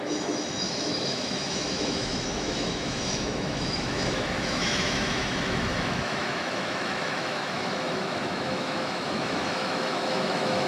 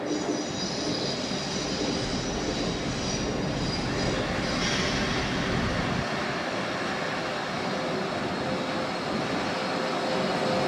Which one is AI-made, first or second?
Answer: first